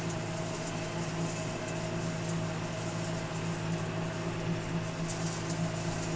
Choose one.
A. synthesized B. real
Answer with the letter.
B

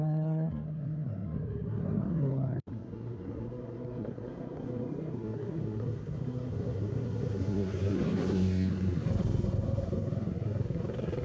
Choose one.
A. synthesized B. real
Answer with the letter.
A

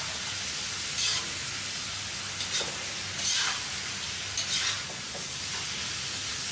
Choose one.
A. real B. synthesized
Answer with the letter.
A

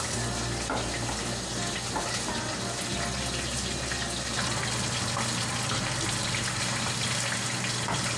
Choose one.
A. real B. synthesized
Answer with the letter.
A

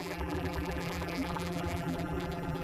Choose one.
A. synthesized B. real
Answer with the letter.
A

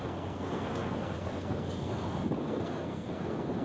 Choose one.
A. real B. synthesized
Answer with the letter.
B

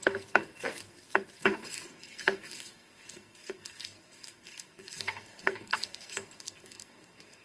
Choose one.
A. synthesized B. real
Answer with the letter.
A